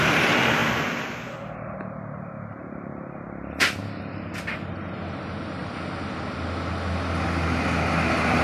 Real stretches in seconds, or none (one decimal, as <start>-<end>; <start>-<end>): 0.0-8.4